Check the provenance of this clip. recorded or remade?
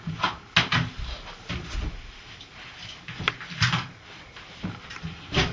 recorded